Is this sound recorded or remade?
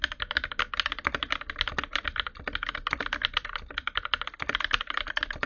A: recorded